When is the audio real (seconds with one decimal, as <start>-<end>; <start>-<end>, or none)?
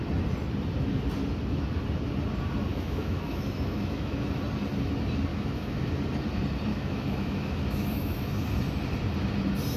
0.0-2.7; 4.4-5.3; 5.9-6.7; 8.2-9.8